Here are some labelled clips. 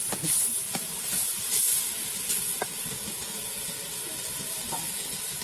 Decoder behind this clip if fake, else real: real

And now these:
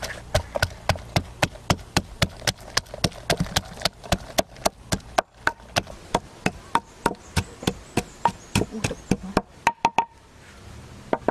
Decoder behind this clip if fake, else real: real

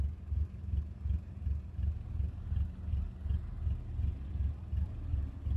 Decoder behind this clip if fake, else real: real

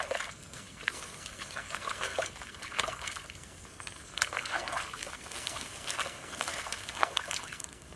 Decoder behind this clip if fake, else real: fake, codec, SNAC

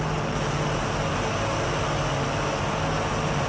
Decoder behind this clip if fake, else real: real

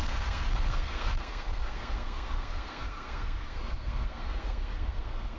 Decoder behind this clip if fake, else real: fake, codec, SNAC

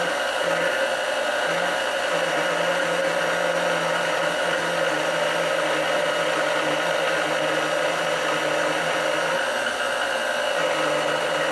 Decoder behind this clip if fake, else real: real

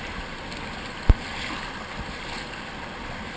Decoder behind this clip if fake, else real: real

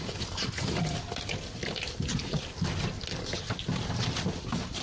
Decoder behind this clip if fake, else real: real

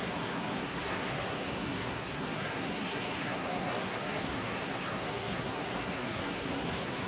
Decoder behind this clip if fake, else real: fake, codec, SNAC